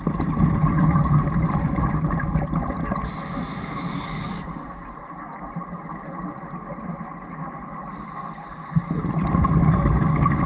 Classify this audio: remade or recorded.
recorded